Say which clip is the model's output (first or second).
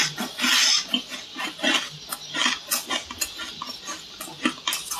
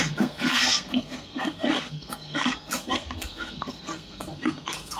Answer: second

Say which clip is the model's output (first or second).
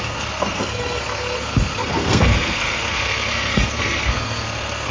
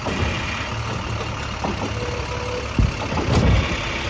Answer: first